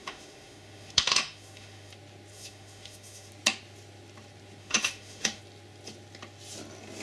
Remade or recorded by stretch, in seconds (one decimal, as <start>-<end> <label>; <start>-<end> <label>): 0.0-1.9 remade; 1.9-2.3 recorded; 2.3-3.3 remade; 3.3-4.6 recorded; 4.6-5.4 remade; 5.4-7.0 recorded